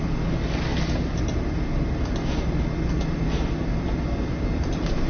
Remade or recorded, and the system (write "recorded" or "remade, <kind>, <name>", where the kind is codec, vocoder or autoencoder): recorded